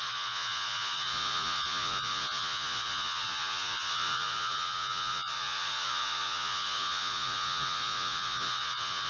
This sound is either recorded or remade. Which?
remade